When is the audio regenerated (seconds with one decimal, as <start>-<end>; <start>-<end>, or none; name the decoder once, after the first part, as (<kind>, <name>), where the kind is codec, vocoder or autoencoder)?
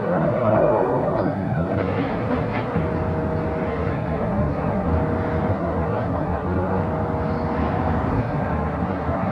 0.0-2.8 (codec, SNAC); 3.7-4.9; 5.5-6.8; 8.1-9.3